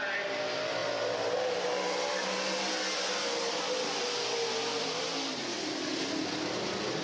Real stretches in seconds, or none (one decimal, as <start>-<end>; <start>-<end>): 0.0-7.0